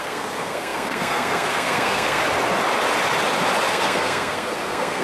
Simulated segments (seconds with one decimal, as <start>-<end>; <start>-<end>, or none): 0.0-2.2; 3.7-5.0